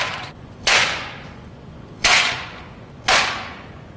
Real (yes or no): no